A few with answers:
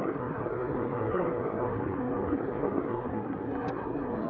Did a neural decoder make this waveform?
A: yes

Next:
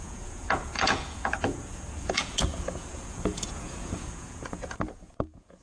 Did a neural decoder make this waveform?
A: yes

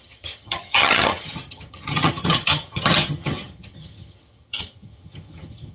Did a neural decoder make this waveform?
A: yes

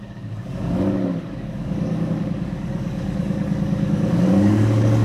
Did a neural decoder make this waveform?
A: yes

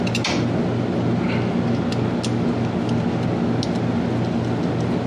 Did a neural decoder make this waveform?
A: no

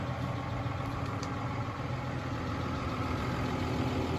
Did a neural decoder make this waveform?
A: no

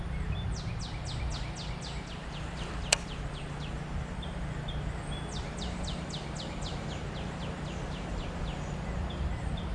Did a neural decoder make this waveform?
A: no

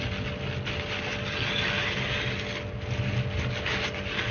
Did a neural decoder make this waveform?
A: no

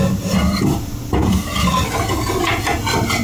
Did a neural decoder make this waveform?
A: no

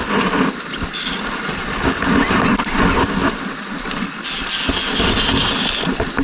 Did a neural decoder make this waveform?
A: no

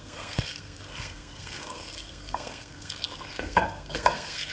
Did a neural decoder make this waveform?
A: yes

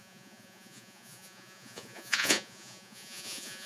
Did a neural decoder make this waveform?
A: yes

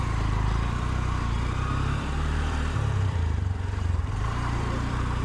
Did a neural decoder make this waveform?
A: yes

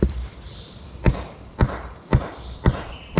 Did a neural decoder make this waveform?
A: no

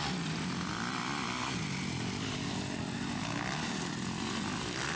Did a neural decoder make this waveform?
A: no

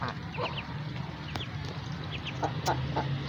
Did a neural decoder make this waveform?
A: no